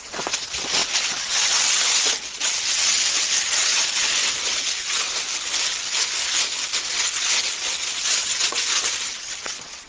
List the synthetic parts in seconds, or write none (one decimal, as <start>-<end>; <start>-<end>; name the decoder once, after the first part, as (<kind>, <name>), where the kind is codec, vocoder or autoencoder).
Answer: 0.0-5.3 (vocoder, WaveNeXt); 6.8-9.9